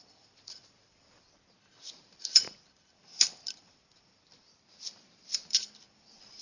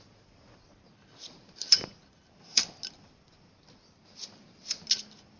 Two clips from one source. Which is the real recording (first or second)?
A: second